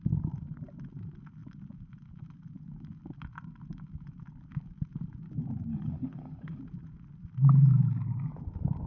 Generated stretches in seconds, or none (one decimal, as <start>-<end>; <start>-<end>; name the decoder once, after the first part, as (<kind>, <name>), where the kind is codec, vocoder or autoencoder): 5.7-6.6 (codec, HILCodec)